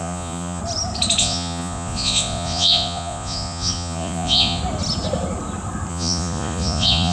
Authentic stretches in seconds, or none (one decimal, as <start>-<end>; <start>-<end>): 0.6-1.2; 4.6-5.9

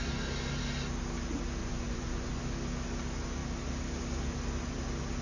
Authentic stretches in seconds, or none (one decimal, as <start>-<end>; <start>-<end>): 0.0-1.6; 2.4-5.2

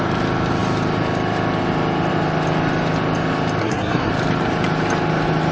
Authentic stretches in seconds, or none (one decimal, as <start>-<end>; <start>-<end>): 0.0-3.6; 4.1-5.5

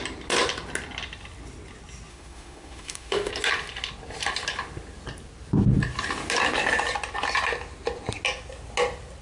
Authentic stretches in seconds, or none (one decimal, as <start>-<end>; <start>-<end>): 0.0-2.1; 3.3-9.2

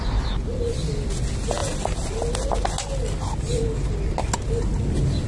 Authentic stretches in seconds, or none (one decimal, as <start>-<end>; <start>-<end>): 0.0-5.3

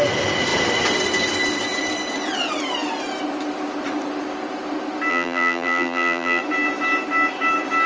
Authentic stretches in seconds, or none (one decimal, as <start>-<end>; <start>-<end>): 0.0-5.1; 6.4-7.9